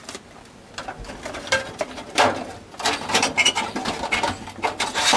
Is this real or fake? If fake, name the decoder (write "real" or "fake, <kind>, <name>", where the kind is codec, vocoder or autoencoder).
real